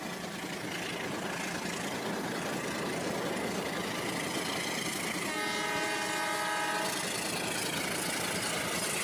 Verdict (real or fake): real